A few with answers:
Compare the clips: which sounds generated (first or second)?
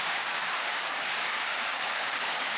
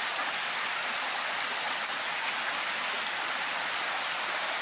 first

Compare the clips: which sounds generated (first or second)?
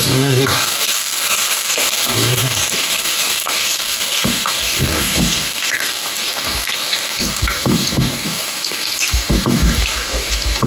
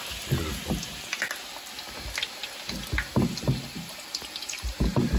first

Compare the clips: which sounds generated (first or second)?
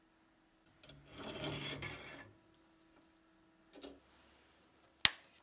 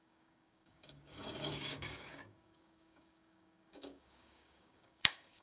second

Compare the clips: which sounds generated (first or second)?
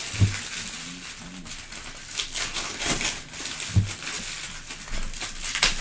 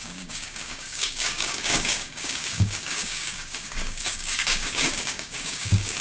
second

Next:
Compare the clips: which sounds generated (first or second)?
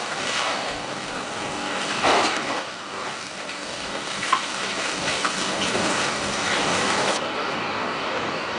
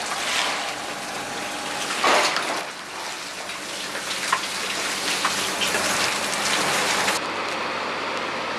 first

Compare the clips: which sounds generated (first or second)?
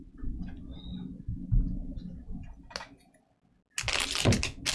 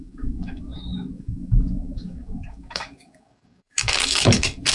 second